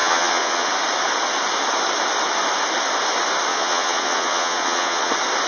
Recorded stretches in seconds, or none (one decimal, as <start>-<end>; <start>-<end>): 0.7-3.5; 5.1-5.5